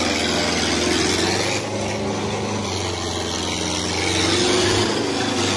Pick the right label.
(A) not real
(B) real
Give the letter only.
B